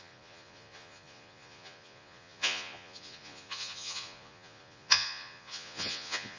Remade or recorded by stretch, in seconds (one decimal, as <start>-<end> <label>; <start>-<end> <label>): 0.0-6.4 remade